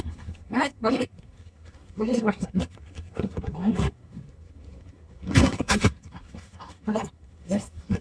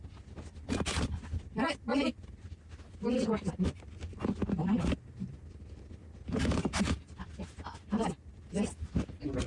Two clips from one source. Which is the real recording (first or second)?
second